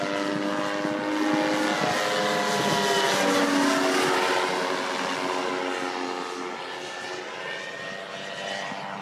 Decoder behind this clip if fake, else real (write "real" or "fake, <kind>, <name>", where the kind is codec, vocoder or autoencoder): real